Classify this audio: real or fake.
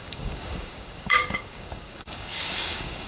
fake